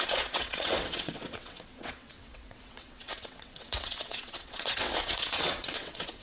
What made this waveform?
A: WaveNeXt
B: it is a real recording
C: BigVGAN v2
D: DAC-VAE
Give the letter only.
A